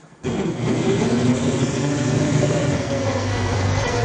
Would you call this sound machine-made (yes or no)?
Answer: yes